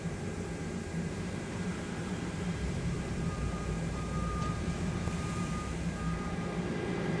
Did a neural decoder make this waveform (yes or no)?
yes